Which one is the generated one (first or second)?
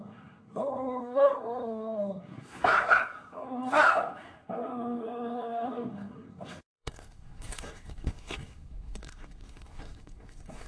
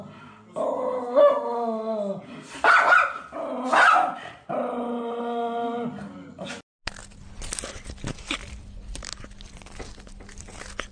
first